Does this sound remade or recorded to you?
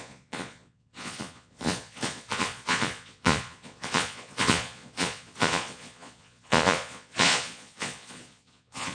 remade